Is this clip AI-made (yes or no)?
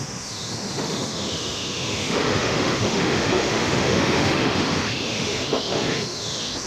yes